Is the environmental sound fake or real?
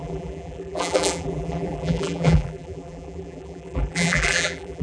fake